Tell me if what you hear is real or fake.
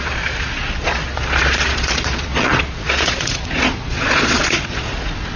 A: fake